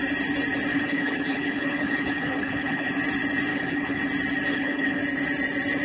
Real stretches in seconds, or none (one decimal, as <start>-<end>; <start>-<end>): 0.0-0.7; 2.9-3.5; 4.0-4.5; 5.0-5.8